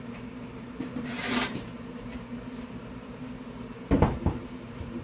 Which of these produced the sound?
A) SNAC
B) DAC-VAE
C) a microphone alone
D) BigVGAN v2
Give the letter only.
D